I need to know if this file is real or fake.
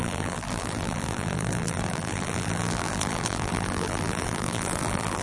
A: fake